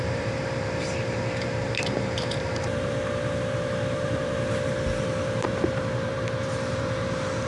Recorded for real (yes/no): no